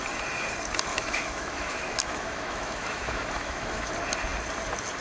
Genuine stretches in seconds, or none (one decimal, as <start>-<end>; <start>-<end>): 0.0-0.9; 3.9-5.0